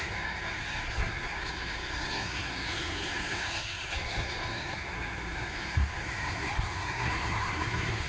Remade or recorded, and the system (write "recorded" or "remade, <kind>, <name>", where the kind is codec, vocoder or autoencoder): remade, codec, SNAC